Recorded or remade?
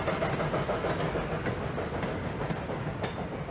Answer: recorded